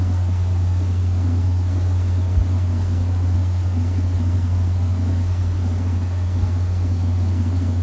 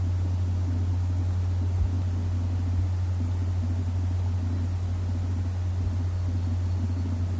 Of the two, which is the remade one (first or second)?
first